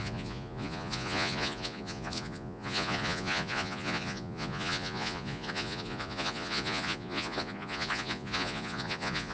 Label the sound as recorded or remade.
remade